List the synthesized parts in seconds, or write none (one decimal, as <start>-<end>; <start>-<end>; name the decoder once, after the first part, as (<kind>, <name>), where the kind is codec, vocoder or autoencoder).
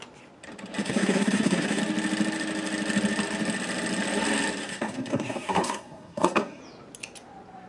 0.8-1.8 (codec, SNAC); 4.6-6.6